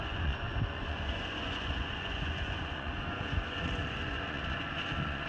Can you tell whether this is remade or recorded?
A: remade